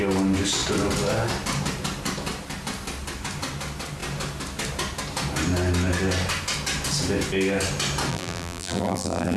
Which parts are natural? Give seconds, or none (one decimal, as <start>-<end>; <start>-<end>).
0.0-8.1